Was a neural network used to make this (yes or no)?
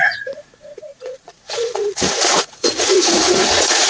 yes